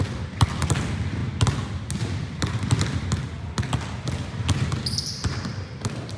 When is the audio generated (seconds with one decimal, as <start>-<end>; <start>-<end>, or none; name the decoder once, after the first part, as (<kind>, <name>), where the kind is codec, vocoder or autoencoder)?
0.0-1.2 (vocoder, BigVGAN v2); 4.9-6.2